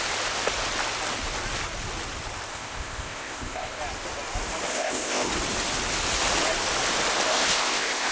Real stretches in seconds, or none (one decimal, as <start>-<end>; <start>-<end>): 0.0-2.5; 3.8-4.7; 5.3-7.3